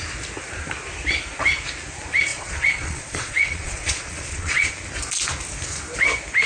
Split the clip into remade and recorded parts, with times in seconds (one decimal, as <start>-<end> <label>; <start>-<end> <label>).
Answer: 0.0-2.3 recorded; 2.3-4.7 remade; 4.7-6.5 recorded

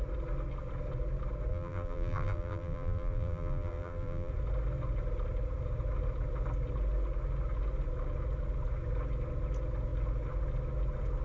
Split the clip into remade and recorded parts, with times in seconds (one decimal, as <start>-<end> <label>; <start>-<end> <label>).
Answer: 0.0-1.5 recorded; 1.5-4.3 remade; 4.3-11.2 recorded

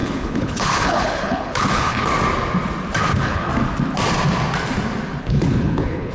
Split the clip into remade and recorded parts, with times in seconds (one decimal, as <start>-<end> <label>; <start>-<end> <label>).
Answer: 0.0-2.1 remade; 2.1-3.1 recorded; 3.1-3.5 remade; 3.5-5.2 recorded; 5.2-6.1 remade

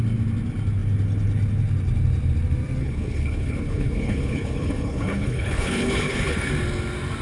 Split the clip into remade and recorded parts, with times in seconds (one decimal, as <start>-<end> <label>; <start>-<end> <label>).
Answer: 0.0-2.8 recorded; 2.8-6.5 remade; 6.5-7.2 recorded

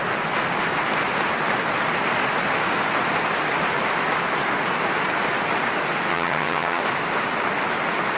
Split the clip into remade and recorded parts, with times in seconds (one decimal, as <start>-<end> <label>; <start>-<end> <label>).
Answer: 0.0-6.1 recorded; 6.1-6.8 remade; 6.8-8.2 recorded

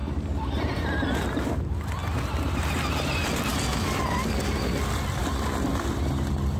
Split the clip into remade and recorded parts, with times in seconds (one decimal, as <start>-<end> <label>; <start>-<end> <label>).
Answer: 0.0-0.6 recorded; 0.6-3.5 remade; 3.5-4.8 recorded; 4.8-6.6 remade

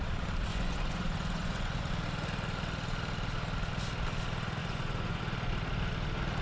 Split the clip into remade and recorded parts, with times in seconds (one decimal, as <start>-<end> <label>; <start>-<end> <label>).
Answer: 0.0-0.5 recorded; 0.5-1.9 remade; 1.9-4.6 recorded; 4.6-5.2 remade; 5.2-6.4 recorded

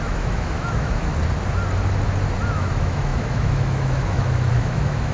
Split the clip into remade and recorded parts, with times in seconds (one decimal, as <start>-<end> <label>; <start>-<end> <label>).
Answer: 0.0-1.1 remade; 1.1-2.5 recorded; 2.5-5.1 remade